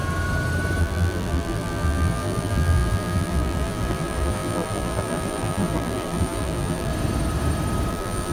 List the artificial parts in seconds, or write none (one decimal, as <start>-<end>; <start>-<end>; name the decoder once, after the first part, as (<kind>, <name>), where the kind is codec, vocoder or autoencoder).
0.8-6.9 (vocoder, BigVGAN v2); 7.9-8.3